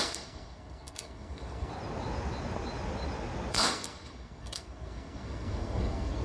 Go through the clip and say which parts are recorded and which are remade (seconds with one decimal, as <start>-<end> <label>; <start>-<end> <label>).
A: 0.0-1.7 remade; 1.7-3.5 recorded; 3.5-6.2 remade